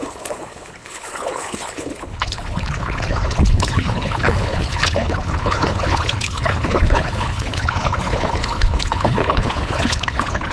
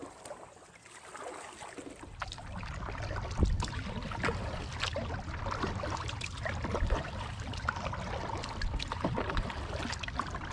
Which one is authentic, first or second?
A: second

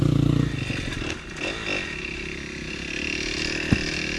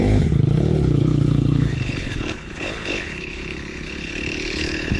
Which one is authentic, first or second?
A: first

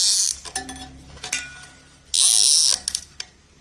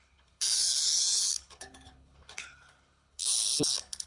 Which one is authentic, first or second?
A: first